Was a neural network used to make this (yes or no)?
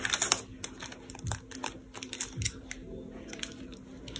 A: no